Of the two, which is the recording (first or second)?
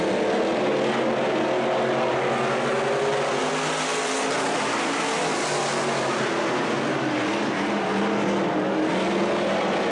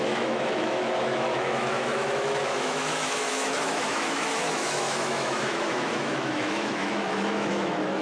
first